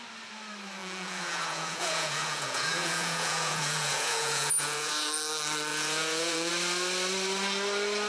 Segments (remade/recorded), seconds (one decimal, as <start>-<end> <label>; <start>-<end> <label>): 0.0-0.8 recorded; 0.8-4.9 remade; 4.9-5.7 recorded; 5.7-6.5 remade; 6.5-8.1 recorded